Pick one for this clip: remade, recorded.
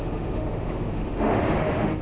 remade